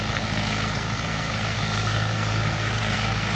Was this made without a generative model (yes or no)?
no